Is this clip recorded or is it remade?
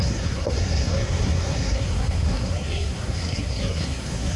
remade